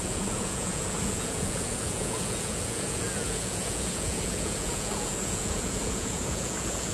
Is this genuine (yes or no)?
no